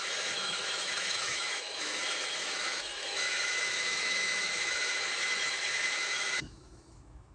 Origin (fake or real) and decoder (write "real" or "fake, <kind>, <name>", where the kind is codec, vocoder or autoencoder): fake, autoencoder, DAC-VAE